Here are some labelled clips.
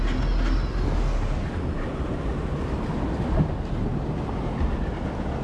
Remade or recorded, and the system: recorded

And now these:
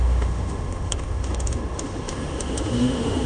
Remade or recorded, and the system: remade, autoencoder, DAC-VAE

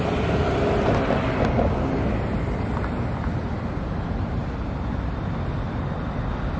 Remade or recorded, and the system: recorded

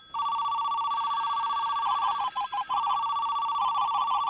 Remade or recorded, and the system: recorded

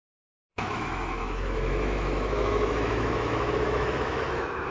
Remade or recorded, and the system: remade, autoencoder, DAC-VAE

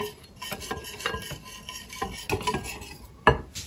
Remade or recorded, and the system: recorded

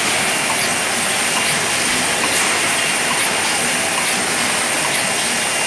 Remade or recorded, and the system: recorded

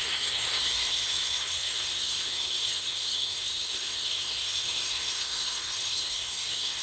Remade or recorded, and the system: remade, codec, SNAC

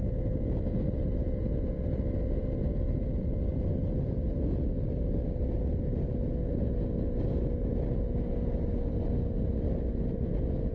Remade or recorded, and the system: recorded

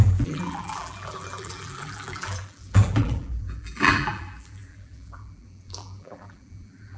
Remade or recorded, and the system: remade, vocoder, BigVGAN v2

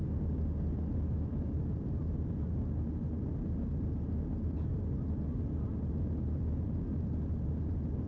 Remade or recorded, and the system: recorded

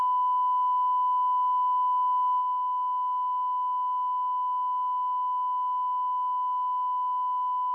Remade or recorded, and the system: recorded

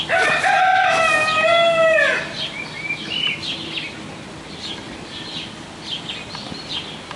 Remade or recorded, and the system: recorded